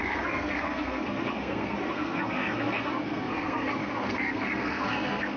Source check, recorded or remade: remade